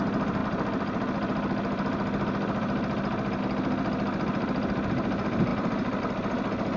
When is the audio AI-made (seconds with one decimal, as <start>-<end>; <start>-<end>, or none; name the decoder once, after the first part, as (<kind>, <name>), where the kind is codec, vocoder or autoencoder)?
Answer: none